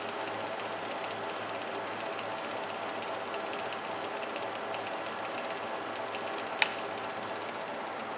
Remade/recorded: recorded